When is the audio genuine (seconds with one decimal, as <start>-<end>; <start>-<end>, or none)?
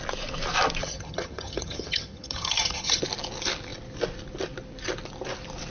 0.0-0.8; 3.0-5.7